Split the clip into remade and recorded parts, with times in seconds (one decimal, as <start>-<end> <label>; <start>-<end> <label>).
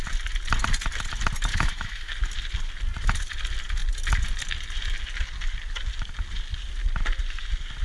0.0-1.5 recorded; 1.5-2.1 remade; 2.1-7.8 recorded